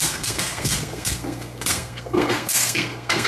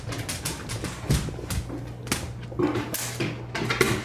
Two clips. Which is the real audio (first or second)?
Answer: second